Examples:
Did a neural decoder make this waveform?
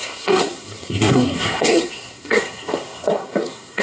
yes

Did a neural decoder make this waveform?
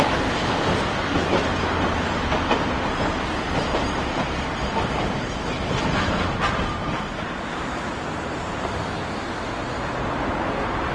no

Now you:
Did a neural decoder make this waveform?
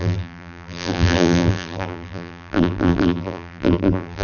yes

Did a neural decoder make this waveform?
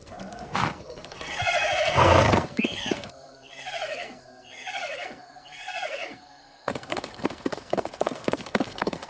yes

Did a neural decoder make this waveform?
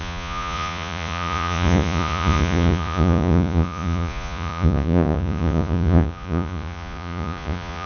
yes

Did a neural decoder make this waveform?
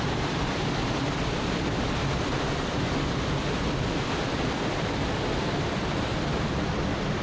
no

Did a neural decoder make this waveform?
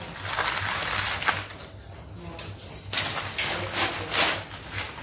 no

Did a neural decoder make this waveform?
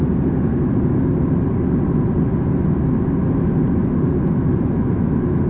no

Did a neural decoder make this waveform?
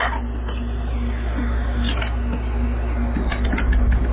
no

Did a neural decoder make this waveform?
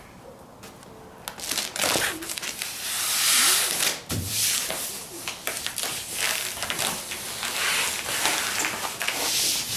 no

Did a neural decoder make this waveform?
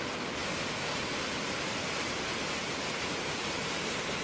no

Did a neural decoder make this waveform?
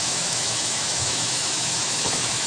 yes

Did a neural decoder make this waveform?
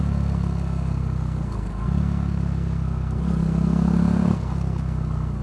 yes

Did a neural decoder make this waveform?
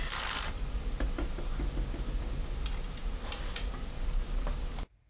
no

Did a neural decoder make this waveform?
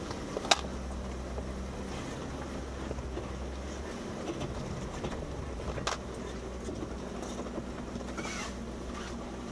no